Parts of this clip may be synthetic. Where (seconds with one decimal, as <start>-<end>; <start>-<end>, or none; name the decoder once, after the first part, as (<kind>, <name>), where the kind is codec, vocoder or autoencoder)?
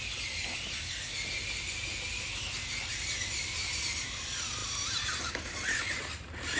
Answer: 4.6-5.3 (vocoder, BigVGAN v2)